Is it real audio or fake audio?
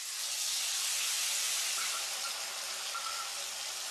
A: real